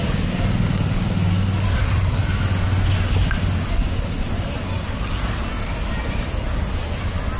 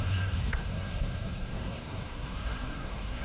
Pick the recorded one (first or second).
first